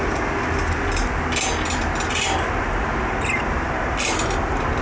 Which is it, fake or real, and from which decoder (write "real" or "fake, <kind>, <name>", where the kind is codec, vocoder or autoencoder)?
real